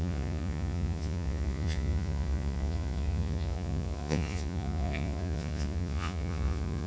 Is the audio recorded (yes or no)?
no